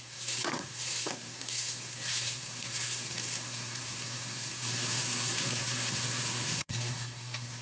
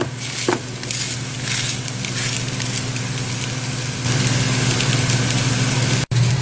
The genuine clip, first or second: second